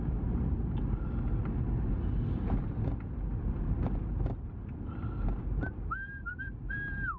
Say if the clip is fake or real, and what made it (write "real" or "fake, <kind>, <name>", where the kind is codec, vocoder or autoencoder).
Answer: real